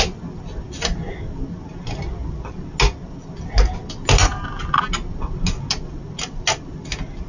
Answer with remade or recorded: recorded